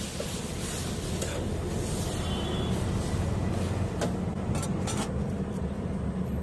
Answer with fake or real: real